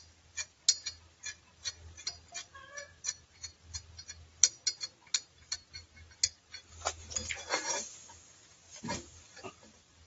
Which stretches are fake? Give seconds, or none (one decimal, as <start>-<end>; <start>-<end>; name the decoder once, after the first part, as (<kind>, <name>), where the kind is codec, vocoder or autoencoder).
none